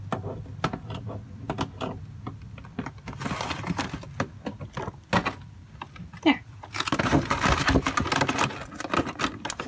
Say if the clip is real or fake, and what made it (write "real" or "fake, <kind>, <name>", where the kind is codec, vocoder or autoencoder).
real